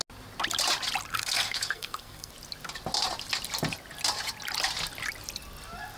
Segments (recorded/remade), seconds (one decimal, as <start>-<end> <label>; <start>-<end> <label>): 0.0-1.1 recorded; 1.1-2.3 remade; 2.3-6.0 recorded